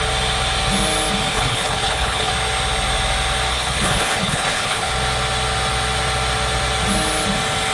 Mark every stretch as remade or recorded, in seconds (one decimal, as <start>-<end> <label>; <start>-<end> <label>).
0.0-1.3 recorded; 1.3-2.3 remade; 2.3-3.5 recorded; 3.5-4.9 remade; 4.9-7.7 recorded